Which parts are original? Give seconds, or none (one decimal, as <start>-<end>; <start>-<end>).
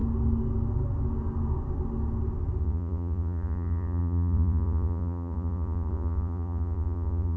0.0-2.6